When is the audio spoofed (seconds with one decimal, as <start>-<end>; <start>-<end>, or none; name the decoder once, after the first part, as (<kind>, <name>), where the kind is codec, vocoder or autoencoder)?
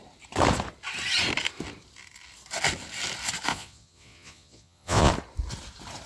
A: 3.5-5.1 (vocoder, Vocos)